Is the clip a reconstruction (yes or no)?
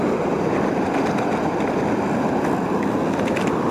no